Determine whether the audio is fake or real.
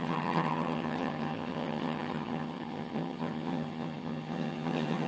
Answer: fake